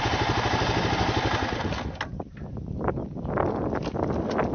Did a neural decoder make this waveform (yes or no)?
no